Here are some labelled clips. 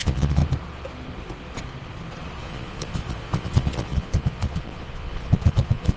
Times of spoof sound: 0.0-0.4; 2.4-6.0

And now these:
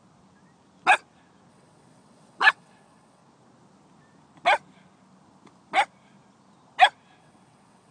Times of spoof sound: 1.5-3.2; 7.2-7.9

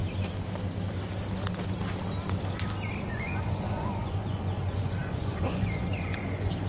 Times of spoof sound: 3.1-6.7

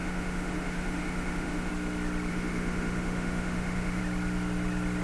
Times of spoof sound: 0.0-1.7; 2.3-4.0